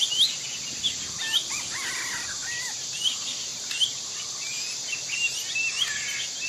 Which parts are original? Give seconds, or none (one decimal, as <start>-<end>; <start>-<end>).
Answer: 0.0-3.5; 4.2-6.5